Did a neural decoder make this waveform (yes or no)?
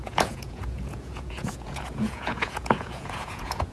yes